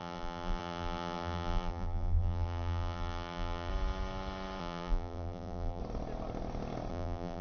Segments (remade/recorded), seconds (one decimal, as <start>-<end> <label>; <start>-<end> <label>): 0.0-3.7 remade; 3.7-4.6 recorded; 4.6-5.8 remade; 5.8-6.9 recorded; 6.9-7.4 remade